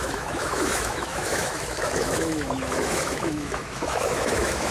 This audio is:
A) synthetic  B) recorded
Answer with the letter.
A